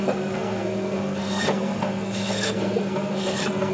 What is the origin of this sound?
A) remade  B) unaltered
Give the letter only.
A